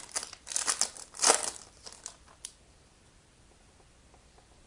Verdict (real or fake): fake